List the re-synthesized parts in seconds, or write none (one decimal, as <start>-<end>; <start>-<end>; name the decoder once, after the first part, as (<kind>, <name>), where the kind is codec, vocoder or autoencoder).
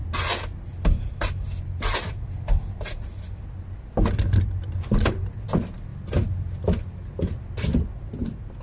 5.9-7.8 (vocoder, BigVGAN v2)